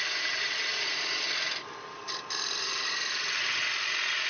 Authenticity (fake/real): real